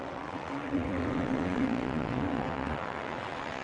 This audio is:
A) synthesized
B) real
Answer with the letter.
A